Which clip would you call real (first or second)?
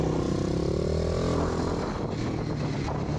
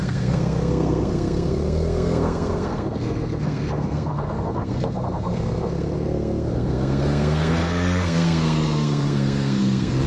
first